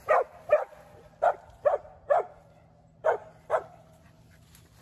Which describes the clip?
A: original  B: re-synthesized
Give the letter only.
A